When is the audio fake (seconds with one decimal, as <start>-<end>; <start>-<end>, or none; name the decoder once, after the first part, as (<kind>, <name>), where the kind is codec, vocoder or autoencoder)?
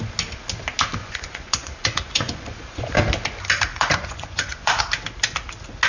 1.0-3.0 (vocoder, Vocos); 3.7-4.8